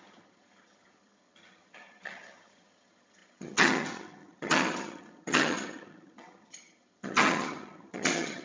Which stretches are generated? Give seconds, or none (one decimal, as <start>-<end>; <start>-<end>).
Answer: 0.0-8.4